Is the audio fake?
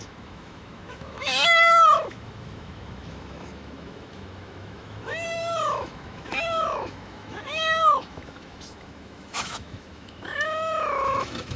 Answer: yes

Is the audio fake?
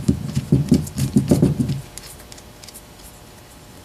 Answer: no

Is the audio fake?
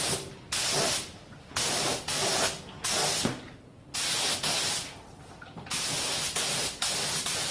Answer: no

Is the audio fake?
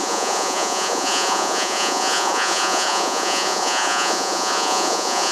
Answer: yes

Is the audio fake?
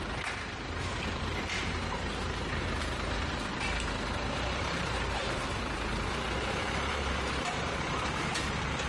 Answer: yes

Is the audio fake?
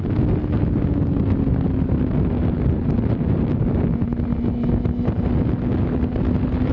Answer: no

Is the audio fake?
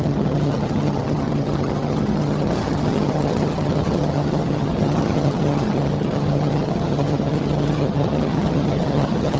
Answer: yes